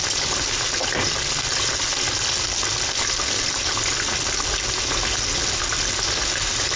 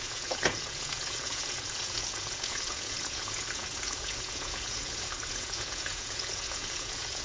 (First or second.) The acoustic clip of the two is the first